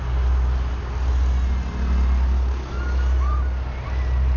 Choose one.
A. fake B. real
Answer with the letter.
B